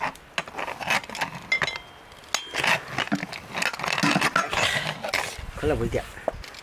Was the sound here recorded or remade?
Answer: recorded